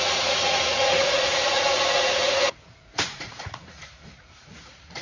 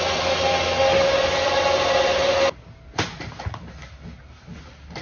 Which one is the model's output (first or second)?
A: first